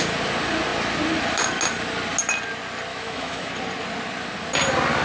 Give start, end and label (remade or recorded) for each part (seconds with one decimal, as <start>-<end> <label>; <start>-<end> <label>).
0.0-2.9 recorded; 2.9-3.5 remade; 3.5-5.0 recorded